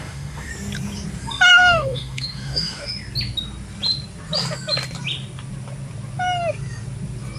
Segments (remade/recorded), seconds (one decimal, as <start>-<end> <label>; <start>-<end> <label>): 0.0-0.5 remade; 0.5-1.5 recorded; 1.5-2.9 remade; 2.9-7.4 recorded